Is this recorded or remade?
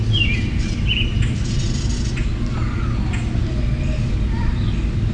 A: recorded